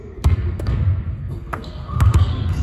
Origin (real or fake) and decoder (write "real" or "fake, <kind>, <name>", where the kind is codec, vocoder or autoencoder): fake, codec, SNAC